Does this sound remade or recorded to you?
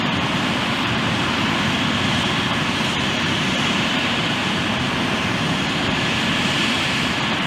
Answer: remade